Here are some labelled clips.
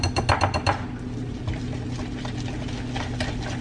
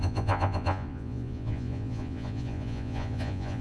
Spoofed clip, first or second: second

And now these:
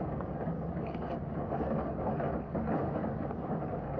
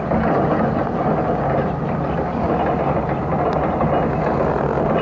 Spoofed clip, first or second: first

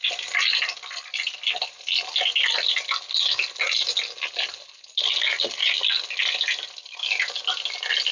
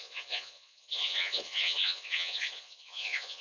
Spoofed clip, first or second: second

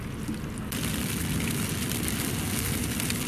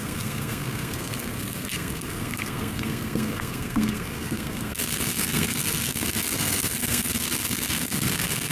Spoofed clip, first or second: second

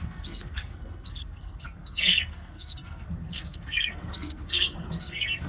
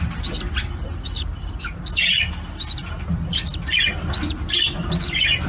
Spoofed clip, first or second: first